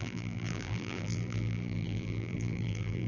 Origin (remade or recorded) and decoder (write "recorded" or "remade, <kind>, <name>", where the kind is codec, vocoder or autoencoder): remade, vocoder, BigVGAN v2